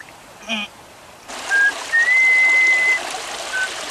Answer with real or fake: real